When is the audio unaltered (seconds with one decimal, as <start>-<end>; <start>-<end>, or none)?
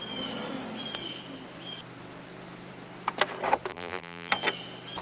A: 0.0-3.7; 4.3-5.0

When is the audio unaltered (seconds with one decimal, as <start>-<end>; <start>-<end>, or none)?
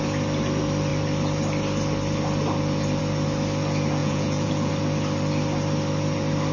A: 0.0-4.0; 4.7-6.5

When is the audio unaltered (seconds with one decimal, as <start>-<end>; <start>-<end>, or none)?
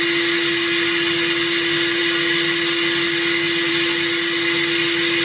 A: 0.0-5.2